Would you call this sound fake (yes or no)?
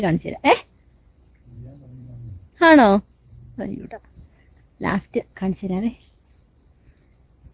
yes